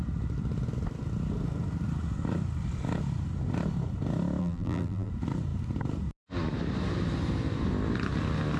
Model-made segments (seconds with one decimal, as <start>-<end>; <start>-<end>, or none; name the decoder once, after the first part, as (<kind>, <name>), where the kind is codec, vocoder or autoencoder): 4.4-5.1 (vocoder, BigVGAN v2)